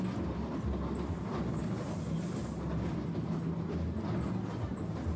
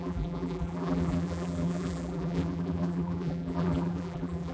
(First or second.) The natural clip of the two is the first